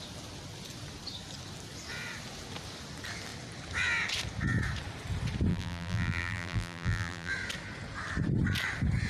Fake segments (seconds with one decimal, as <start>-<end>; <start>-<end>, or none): 5.5-7.3